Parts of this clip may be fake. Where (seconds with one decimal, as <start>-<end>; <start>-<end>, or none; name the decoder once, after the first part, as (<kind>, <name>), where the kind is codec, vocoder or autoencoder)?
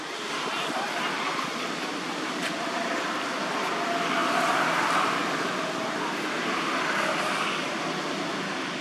4.2-5.5 (vocoder, BigVGAN v2)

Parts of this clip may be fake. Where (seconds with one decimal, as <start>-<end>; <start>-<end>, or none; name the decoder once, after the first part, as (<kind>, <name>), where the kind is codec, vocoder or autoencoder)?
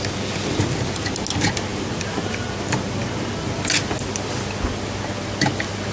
none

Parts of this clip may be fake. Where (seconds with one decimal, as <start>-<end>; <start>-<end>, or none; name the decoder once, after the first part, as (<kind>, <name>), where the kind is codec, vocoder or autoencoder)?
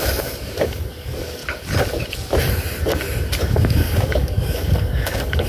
0.0-1.4 (codec, DAC); 3.4-5.5